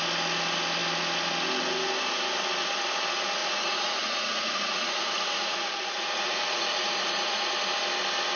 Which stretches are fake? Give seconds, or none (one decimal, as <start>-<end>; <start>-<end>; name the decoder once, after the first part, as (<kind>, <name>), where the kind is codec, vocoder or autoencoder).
3.4-7.5 (vocoder, Vocos)